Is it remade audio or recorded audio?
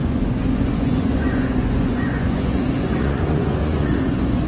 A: remade